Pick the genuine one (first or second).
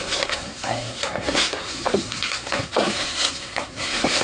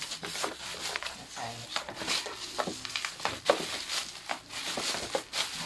second